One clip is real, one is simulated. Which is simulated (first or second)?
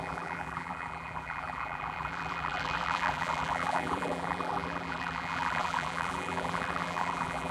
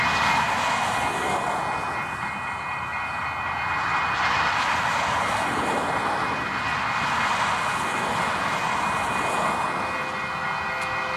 first